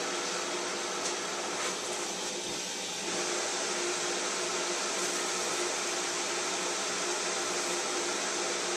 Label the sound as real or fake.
real